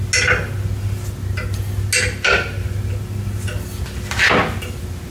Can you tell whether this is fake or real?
real